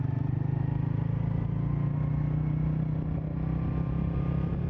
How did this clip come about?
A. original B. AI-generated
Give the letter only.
A